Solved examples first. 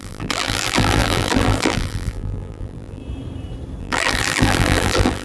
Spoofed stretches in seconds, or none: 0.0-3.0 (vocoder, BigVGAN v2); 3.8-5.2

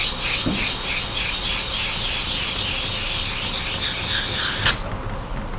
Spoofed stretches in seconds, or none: none

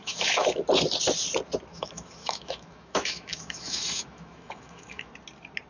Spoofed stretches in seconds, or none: 0.0-0.6 (autoencoder, DAC-VAE); 1.7-5.1

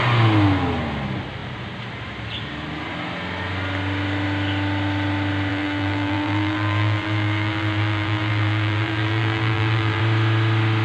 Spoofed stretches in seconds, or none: 5.5-10.0 (vocoder, BigVGAN v2)

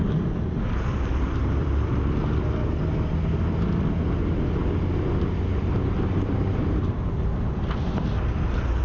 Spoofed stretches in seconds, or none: 0.0-2.6 (vocoder, BigVGAN v2); 5.9-7.3

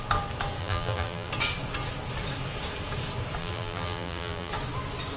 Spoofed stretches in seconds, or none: 0.6-1.3 (vocoder, BigVGAN v2); 3.4-4.5

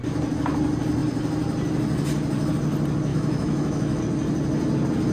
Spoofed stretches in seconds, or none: 3.1-4.0 (autoencoder, DAC-VAE)